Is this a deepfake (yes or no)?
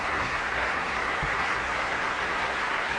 yes